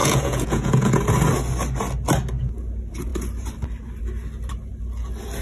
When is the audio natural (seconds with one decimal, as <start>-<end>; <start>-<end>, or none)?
1.0-5.4